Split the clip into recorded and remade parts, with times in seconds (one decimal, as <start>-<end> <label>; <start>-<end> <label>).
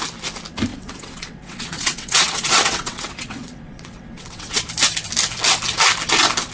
0.0-0.7 recorded; 0.7-4.6 remade; 4.6-6.5 recorded